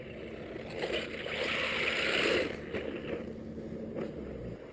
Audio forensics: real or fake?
real